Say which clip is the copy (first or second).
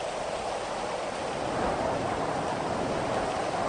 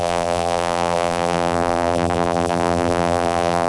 second